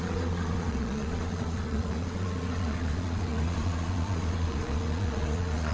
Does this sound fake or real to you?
fake